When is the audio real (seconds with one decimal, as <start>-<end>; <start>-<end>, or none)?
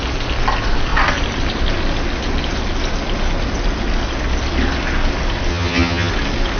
0.0-5.5; 6.1-6.6